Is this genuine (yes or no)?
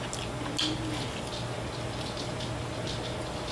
yes